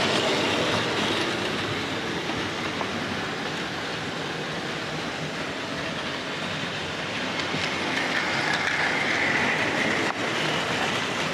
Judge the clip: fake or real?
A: real